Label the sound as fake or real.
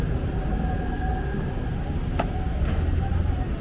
real